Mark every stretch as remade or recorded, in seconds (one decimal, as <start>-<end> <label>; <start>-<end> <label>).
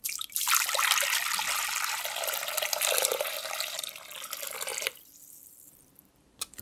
0.0-4.7 remade; 4.7-5.5 recorded; 5.5-6.6 remade